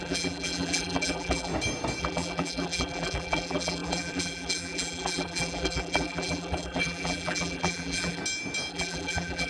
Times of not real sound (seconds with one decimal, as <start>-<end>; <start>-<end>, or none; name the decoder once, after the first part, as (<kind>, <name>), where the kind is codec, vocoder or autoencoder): 0.0-1.5 (vocoder, BigVGAN v2); 2.0-8.2; 8.7-9.5